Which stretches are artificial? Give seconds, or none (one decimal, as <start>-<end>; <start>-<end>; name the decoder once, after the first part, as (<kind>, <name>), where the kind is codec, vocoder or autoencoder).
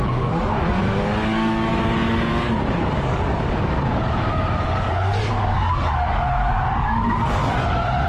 0.0-8.1 (codec, DAC)